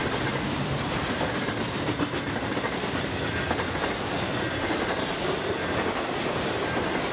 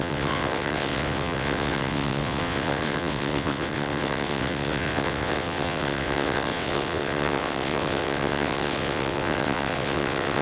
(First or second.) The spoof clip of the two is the second